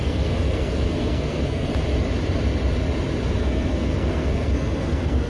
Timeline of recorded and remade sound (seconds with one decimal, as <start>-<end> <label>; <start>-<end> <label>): 0.0-1.7 remade; 1.7-3.4 recorded; 3.4-5.3 remade